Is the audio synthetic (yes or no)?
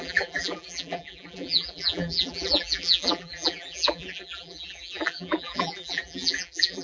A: yes